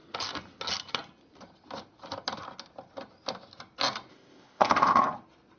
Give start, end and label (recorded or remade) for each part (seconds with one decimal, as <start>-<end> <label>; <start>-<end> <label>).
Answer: 0.0-4.1 recorded; 4.1-5.0 remade; 5.0-5.6 recorded